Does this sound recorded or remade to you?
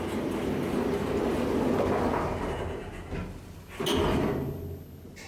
recorded